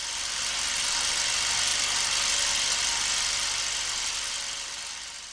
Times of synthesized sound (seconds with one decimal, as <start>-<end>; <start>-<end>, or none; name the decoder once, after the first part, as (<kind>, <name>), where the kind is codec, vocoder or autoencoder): none